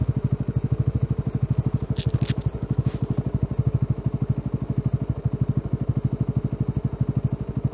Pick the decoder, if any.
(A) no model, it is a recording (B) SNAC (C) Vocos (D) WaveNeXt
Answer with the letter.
A